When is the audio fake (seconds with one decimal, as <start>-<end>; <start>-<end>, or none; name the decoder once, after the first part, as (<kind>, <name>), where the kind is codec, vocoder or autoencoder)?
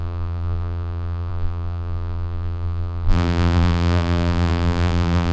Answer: 0.0-5.3 (vocoder, BigVGAN v2)